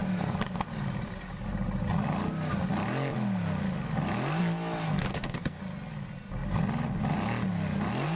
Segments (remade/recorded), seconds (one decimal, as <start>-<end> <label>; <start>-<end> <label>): 0.0-5.1 recorded; 5.1-5.6 remade; 5.6-8.2 recorded